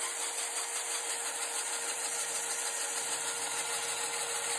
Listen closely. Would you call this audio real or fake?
real